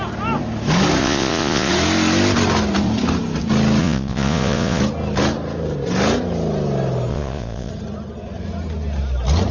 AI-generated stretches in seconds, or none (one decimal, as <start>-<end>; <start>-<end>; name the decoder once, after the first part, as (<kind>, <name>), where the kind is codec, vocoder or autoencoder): 1.0-1.7 (vocoder, Vocos); 3.8-4.8; 7.1-7.7